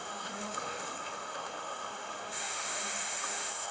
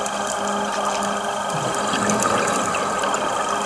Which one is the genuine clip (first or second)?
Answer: second